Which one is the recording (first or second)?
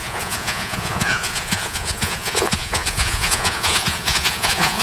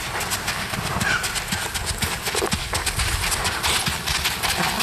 second